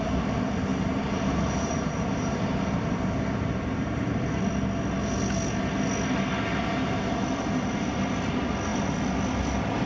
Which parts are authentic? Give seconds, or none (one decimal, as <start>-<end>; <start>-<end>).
0.0-0.7; 4.1-9.9